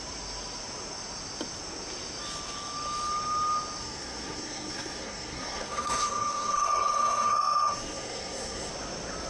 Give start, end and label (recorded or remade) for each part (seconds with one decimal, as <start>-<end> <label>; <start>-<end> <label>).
0.0-3.8 recorded; 3.8-8.7 remade; 8.7-9.3 recorded